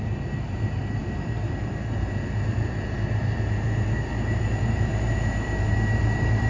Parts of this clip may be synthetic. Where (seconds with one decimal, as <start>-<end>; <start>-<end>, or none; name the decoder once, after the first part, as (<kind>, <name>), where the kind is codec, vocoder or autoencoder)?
0.0-6.5 (vocoder, BigVGAN v2)